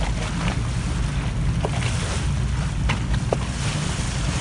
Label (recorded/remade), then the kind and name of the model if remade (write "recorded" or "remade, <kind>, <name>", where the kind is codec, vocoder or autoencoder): recorded